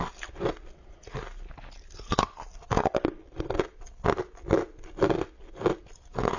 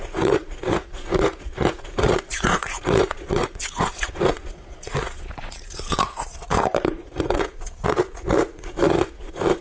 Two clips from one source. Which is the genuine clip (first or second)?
first